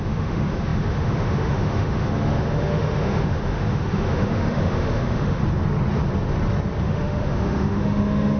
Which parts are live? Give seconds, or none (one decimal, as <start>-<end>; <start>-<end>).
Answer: 5.4-6.8